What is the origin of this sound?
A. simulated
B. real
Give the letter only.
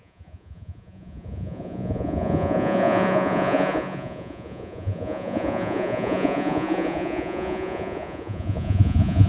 A